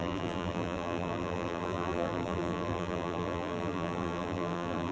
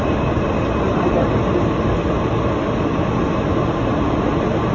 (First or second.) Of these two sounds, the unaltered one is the second